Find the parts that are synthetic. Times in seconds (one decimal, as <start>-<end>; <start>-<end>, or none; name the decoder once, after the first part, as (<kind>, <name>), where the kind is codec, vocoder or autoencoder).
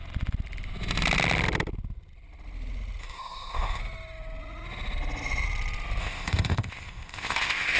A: 3.0-3.8 (codec, ZipCodec); 6.0-7.8